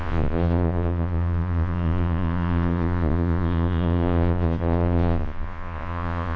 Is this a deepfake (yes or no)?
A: yes